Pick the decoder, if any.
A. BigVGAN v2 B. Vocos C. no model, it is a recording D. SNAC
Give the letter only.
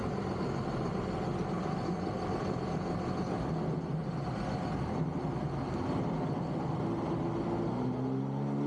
C